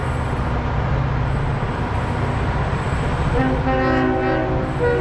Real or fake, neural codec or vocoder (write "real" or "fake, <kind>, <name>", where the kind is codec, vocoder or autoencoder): real